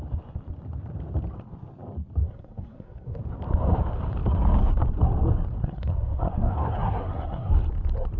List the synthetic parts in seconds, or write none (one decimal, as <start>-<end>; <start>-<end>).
2.2-3.2; 5.6-7.5